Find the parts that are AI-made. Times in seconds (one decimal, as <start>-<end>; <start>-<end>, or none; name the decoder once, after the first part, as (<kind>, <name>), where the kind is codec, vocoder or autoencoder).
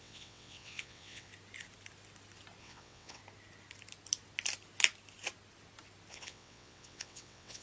0.0-1.3 (vocoder, WaveNeXt); 2.6-3.2; 6.1-7.6